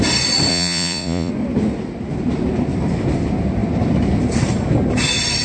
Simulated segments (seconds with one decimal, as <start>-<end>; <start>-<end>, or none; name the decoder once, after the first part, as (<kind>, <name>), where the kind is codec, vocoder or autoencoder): 0.5-1.3 (vocoder, Vocos)